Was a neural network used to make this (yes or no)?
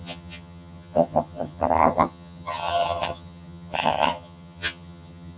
yes